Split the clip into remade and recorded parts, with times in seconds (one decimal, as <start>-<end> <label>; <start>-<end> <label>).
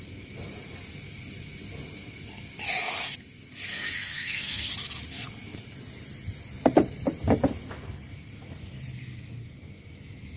0.0-3.7 recorded; 3.7-4.7 remade; 4.7-10.4 recorded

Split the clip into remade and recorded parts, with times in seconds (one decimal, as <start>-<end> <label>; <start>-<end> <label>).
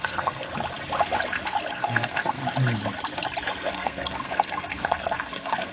0.0-0.5 remade; 0.5-1.7 recorded; 1.7-2.4 remade; 2.4-3.7 recorded; 3.7-5.7 remade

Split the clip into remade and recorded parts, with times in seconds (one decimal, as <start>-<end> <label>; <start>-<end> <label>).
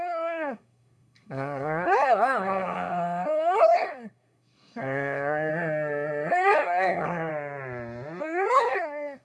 0.0-5.5 remade; 5.5-6.3 recorded; 6.3-7.3 remade; 7.3-8.2 recorded; 8.2-9.2 remade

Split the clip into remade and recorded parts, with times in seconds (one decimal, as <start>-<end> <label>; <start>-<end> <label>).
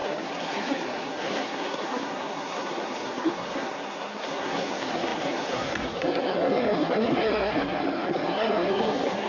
0.0-9.3 remade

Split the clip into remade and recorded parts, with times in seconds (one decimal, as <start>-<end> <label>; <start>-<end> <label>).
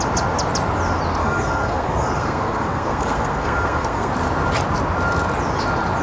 0.0-1.2 recorded; 1.2-4.1 remade; 4.1-6.0 recorded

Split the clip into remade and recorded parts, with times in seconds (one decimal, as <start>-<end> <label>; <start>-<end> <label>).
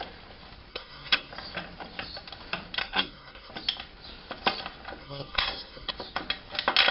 0.0-0.7 recorded; 0.7-1.3 remade; 1.3-2.8 recorded; 2.8-3.5 remade; 3.5-5.0 recorded; 5.0-5.9 remade; 5.9-6.9 recorded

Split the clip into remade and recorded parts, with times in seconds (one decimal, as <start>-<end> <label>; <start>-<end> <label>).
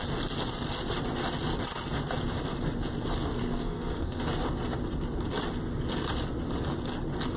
0.0-3.4 recorded; 3.4-4.2 remade; 4.2-7.4 recorded